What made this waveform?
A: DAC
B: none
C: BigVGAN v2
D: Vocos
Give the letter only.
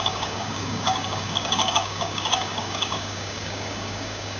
A